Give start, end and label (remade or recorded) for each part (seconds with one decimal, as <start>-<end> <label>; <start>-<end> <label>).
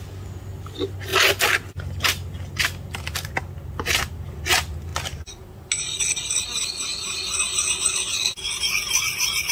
0.0-9.5 recorded